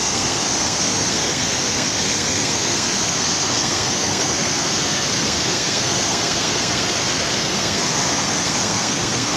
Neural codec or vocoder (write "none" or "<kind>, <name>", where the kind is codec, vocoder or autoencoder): codec, SNAC